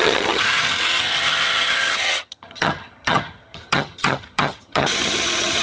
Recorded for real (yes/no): no